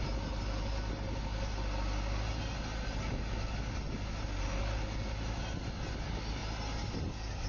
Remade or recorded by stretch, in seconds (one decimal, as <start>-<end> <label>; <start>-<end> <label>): 0.0-7.5 recorded

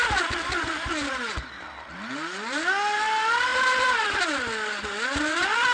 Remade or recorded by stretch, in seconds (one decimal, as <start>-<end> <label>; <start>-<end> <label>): 0.0-5.7 recorded

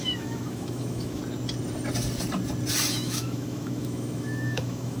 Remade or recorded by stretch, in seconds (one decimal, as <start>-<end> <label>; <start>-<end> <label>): 0.0-1.2 remade; 1.2-2.9 recorded; 2.9-5.0 remade

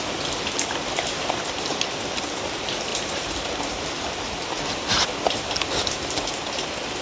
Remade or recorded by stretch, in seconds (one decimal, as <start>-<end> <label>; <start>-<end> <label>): 0.0-7.0 recorded

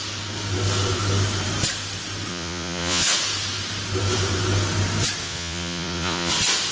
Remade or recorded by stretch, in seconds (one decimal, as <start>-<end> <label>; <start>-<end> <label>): 0.0-2.3 recorded; 2.3-3.0 remade; 3.0-5.2 recorded; 5.2-6.3 remade; 6.3-6.7 recorded

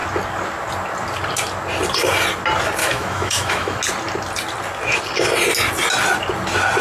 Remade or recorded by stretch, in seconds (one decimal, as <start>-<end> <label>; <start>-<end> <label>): 0.0-2.8 recorded; 2.8-3.8 remade; 3.8-6.8 recorded